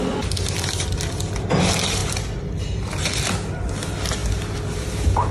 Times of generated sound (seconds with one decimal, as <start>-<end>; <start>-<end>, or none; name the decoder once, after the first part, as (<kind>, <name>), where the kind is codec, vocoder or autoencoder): none